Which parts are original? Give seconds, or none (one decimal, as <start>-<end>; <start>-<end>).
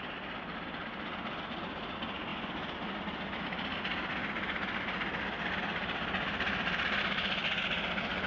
0.0-8.3